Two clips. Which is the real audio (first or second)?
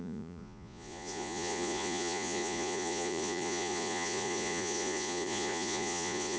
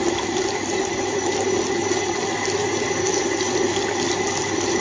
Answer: second